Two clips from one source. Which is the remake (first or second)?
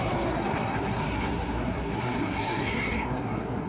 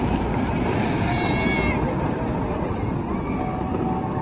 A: first